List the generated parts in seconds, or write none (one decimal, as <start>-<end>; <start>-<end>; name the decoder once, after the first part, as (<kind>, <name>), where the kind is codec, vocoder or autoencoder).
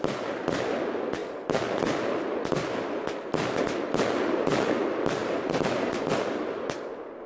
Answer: 5.2-6.2 (vocoder, BigVGAN v2)